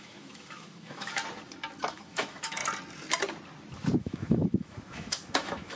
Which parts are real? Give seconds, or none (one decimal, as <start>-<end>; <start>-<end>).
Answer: 1.2-1.9; 2.6-4.0